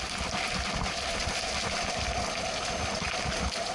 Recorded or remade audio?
recorded